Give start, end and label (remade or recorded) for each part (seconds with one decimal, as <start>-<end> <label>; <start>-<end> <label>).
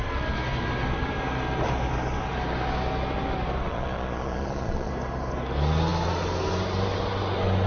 0.0-3.7 recorded; 3.7-4.9 remade; 4.9-7.7 recorded